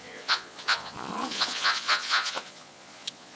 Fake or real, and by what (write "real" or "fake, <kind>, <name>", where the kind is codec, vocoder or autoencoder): fake, vocoder, Vocos